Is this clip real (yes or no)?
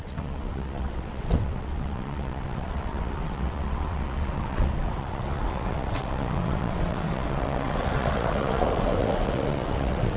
no